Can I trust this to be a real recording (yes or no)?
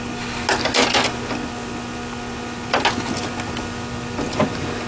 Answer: yes